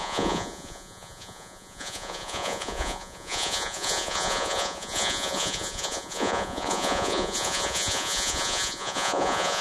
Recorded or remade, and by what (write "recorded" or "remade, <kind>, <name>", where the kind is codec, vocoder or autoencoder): remade, vocoder, Vocos